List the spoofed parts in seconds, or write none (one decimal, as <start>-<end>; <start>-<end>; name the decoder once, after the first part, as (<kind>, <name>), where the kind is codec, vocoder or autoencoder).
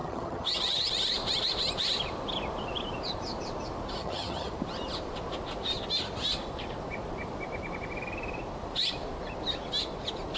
0.0-0.9 (vocoder, HiFi-GAN); 4.0-4.5